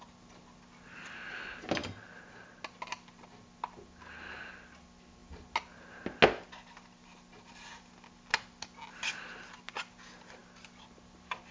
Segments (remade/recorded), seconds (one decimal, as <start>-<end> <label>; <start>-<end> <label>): 0.0-11.5 recorded